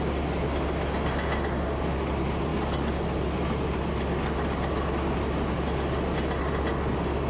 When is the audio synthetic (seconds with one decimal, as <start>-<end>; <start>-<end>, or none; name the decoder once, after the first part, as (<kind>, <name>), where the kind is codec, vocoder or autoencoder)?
none